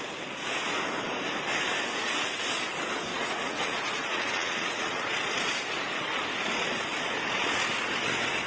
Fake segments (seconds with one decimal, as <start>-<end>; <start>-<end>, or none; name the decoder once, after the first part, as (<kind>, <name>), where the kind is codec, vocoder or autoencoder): 3.1-5.1 (vocoder, Vocos)

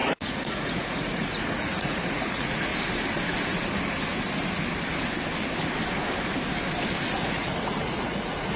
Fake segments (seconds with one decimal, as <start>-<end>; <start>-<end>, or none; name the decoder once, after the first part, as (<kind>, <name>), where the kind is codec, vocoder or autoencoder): 0.0-2.7 (vocoder, Vocos); 7.2-8.6